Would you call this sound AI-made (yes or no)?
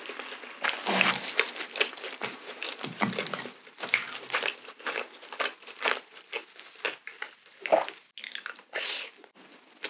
no